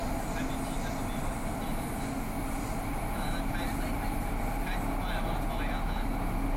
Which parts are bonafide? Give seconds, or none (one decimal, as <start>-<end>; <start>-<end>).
0.0-6.6